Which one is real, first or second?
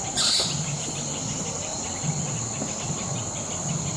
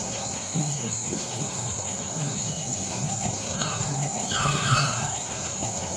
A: first